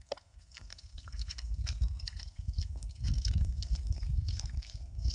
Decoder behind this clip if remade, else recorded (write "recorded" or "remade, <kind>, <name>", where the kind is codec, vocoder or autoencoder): remade, codec, SNAC